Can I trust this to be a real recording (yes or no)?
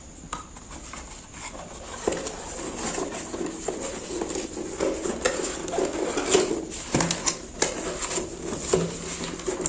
yes